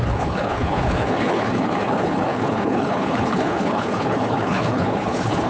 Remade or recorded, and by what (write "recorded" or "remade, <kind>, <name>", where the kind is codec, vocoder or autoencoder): remade, codec, HILCodec